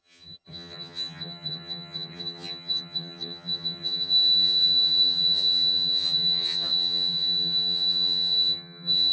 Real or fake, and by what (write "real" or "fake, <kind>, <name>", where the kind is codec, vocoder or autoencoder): fake, vocoder, HiFi-GAN